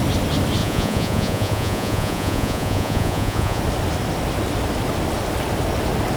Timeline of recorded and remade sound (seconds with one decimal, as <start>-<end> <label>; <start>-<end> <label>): 0.0-0.6 recorded; 0.6-3.6 remade; 3.6-6.2 recorded